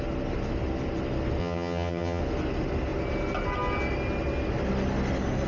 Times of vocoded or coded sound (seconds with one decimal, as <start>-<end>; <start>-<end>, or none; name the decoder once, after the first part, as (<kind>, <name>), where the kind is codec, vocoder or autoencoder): 1.4-2.2 (vocoder, HiFi-GAN)